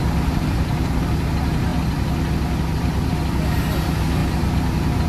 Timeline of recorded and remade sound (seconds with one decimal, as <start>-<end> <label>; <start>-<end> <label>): 0.0-5.1 recorded